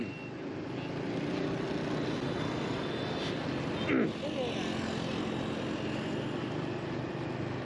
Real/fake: real